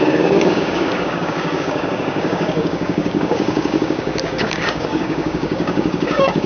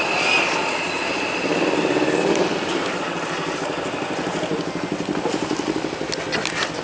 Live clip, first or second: second